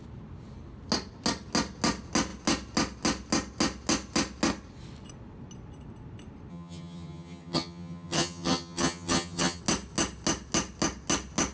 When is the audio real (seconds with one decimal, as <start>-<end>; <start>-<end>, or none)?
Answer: 0.0-6.5; 9.6-11.5